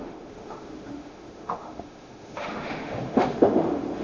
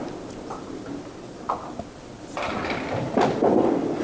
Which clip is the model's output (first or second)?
first